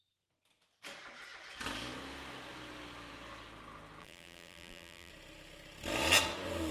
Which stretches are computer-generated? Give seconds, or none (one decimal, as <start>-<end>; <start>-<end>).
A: 4.0-5.1